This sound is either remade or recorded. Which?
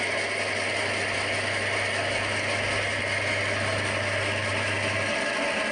recorded